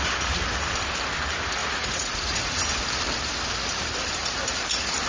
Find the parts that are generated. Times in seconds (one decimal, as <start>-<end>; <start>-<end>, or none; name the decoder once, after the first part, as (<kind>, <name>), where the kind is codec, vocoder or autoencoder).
1.6-2.6 (vocoder, Vocos)